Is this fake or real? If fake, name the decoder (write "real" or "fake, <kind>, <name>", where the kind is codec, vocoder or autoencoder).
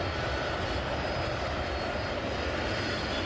real